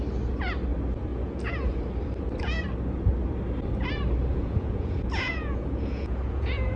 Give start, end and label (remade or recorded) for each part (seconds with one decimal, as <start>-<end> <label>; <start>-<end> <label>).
0.0-1.1 recorded; 1.1-1.8 remade; 1.8-4.3 recorded; 4.3-6.8 remade